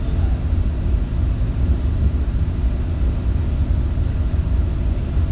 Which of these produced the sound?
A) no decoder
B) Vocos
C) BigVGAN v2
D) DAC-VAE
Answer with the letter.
A